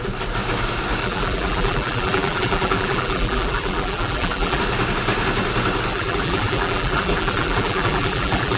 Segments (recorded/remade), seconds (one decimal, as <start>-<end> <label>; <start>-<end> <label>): 0.0-1.0 recorded; 1.0-4.6 remade; 4.6-5.9 recorded; 5.9-8.6 remade